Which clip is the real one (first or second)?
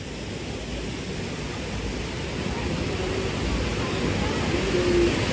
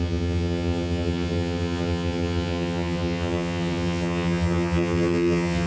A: first